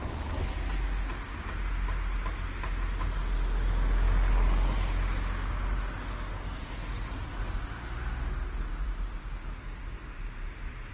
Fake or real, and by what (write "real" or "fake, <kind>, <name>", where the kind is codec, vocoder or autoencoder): real